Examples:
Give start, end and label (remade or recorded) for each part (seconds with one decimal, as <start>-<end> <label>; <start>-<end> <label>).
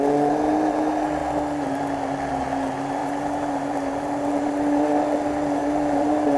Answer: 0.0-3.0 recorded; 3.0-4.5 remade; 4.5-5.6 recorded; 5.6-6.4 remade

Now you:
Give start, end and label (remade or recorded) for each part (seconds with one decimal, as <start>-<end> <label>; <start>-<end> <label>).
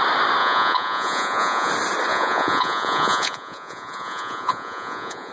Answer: 0.0-0.4 recorded; 0.4-1.7 remade; 1.7-2.1 recorded; 2.1-5.3 remade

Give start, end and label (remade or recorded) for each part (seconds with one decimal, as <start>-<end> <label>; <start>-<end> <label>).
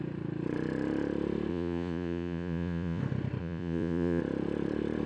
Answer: 0.0-1.5 recorded; 1.5-3.0 remade; 3.0-3.4 recorded; 3.4-4.2 remade; 4.2-5.1 recorded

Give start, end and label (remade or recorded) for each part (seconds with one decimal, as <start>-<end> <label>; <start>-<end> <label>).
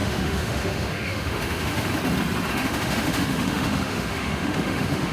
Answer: 0.0-1.9 remade; 1.9-2.5 recorded; 2.5-5.1 remade